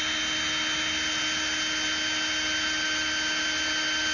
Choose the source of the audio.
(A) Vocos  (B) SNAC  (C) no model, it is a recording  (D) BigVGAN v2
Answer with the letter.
C